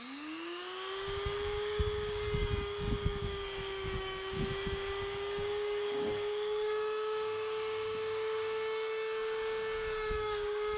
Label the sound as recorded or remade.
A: remade